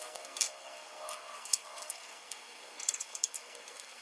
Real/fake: fake